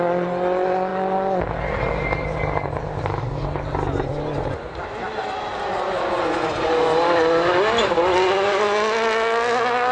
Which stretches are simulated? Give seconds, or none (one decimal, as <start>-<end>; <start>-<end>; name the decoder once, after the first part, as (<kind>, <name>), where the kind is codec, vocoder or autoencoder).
none

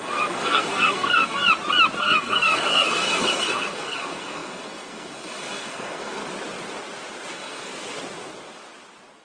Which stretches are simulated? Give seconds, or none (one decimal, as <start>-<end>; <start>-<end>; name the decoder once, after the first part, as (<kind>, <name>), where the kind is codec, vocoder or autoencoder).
0.0-1.4 (codec, SNAC); 2.0-6.2; 7.3-7.7